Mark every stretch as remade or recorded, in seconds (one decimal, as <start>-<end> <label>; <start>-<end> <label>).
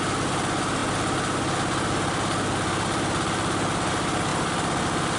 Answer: 0.0-5.2 recorded